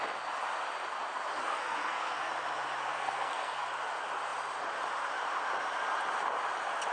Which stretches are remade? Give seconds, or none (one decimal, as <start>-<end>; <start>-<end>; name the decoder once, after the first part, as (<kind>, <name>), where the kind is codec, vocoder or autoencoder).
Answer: 1.4-2.3 (codec, SNAC); 2.9-3.7